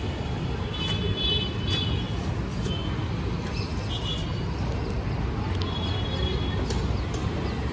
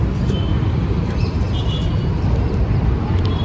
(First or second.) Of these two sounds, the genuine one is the first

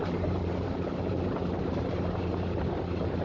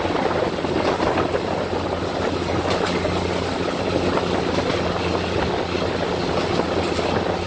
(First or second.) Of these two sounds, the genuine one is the second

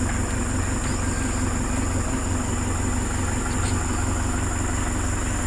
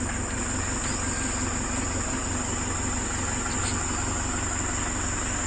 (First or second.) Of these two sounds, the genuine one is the second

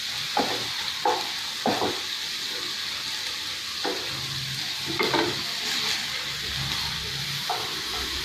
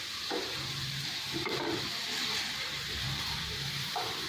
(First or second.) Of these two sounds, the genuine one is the first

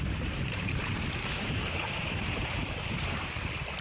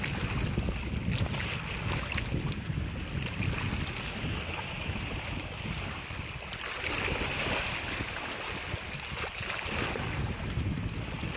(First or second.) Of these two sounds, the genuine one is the second